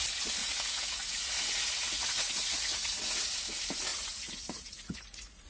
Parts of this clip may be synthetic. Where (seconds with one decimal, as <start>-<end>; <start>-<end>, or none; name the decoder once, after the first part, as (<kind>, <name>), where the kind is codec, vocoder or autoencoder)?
0.4-3.3 (vocoder, Vocos); 3.9-5.5

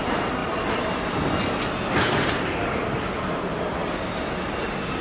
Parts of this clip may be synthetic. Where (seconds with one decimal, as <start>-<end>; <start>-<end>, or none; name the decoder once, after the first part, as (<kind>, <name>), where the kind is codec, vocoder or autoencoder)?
none

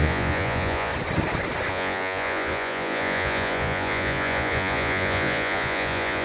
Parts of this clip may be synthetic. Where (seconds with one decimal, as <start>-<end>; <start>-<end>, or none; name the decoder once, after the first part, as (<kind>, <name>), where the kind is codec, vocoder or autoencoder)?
0.0-0.9 (vocoder, Vocos); 1.7-6.2

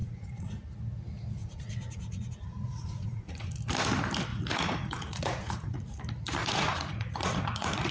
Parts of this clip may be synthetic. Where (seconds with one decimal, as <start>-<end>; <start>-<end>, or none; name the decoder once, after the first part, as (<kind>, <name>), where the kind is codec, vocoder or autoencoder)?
0.0-0.5 (vocoder, Vocos); 1.4-3.5; 4.3-6.0; 6.4-7.9